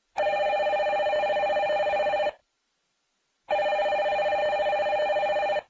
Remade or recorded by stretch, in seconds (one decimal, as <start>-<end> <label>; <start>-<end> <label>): 0.0-5.7 recorded

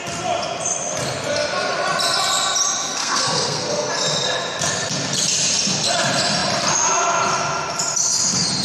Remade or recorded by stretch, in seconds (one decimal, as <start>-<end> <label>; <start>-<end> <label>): 0.0-3.0 recorded; 3.0-3.9 remade; 3.9-8.6 recorded

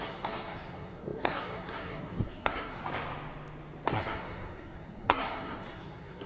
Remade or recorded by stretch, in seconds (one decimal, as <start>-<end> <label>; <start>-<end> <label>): 0.0-2.8 remade; 2.8-3.9 recorded; 3.9-6.3 remade

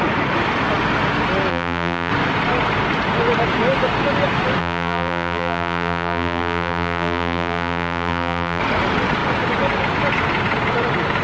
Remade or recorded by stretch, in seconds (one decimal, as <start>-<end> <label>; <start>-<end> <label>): 0.0-1.5 recorded; 1.5-2.1 remade; 2.1-4.6 recorded; 4.6-8.6 remade; 8.6-11.2 recorded

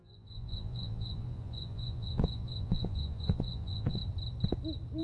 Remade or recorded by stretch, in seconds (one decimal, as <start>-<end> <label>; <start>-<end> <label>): 0.0-4.0 remade; 4.0-5.0 recorded